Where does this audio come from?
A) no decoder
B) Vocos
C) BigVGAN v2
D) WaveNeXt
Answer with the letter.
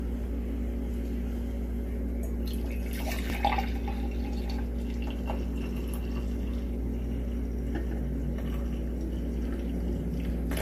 A